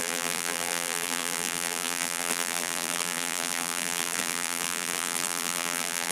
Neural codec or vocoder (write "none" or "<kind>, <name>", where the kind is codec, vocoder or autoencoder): vocoder, BigVGAN v2